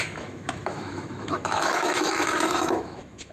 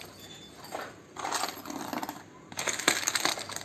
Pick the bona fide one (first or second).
second